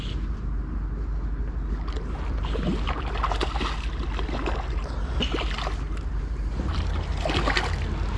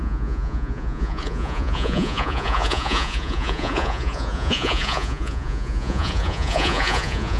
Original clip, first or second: first